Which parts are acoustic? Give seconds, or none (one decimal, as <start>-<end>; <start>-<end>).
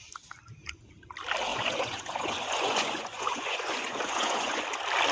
0.0-1.5; 4.6-5.1